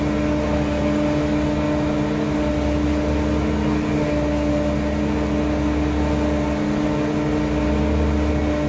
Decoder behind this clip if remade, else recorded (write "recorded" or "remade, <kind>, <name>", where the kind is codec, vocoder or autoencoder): recorded